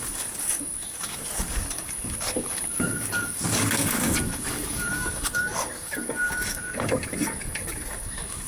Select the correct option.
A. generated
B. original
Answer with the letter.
A